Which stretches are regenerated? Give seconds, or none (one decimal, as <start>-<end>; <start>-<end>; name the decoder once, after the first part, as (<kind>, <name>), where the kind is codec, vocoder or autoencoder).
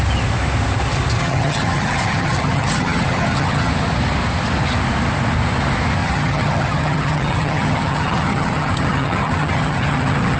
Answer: 1.2-3.7 (vocoder, HiFi-GAN); 6.0-10.4